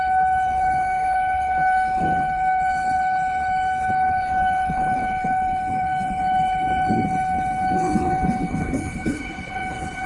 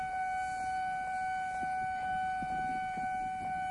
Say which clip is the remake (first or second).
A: first